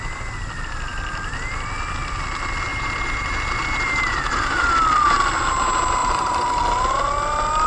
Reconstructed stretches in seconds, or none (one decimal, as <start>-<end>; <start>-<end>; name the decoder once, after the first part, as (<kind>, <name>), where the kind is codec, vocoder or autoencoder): 2.7-4.7 (vocoder, BigVGAN v2); 6.0-6.6